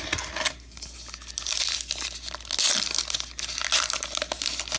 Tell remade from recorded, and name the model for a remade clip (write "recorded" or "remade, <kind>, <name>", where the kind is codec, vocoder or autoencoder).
recorded